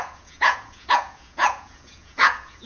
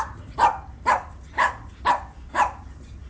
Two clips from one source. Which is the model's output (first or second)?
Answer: first